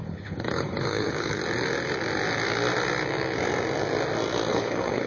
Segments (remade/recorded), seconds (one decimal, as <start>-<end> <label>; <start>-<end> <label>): 0.0-1.4 remade; 1.4-4.5 recorded; 4.5-5.1 remade

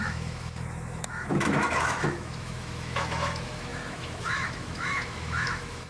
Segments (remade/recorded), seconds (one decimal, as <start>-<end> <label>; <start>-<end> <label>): 0.0-5.9 remade

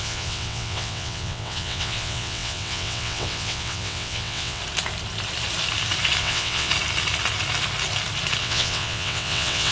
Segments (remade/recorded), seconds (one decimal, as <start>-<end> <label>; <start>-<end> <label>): 0.0-4.6 remade; 4.6-6.2 recorded; 6.2-6.7 remade; 6.7-8.4 recorded; 8.4-9.7 remade